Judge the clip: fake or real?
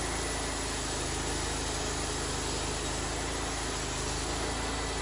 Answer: real